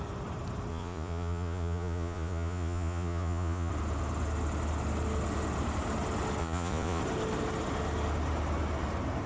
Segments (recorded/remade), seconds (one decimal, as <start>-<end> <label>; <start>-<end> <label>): 0.0-0.7 recorded; 0.7-3.7 remade; 3.7-6.4 recorded; 6.4-7.0 remade; 7.0-9.3 recorded